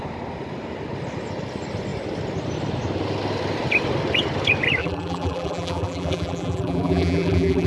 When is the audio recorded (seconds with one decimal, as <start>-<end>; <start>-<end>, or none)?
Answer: 0.0-4.8